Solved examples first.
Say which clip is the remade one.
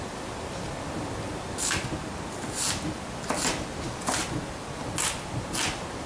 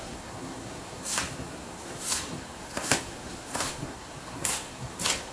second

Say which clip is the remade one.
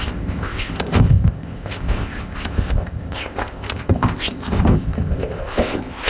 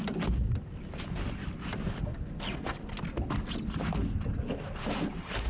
first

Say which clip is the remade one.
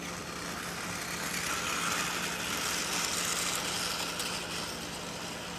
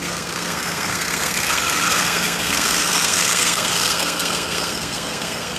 second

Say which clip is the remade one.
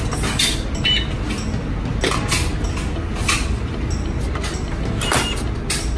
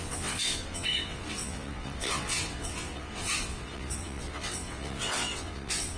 second